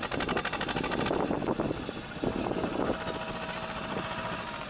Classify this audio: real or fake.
real